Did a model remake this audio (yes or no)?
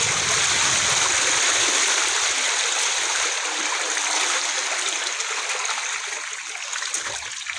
no